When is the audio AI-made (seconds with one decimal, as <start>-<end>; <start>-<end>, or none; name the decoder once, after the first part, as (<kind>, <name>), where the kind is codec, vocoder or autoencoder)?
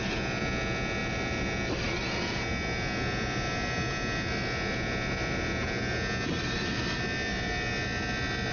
none